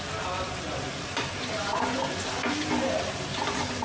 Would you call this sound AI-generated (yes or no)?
no